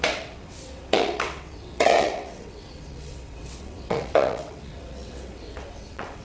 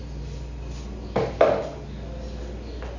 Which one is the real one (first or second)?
second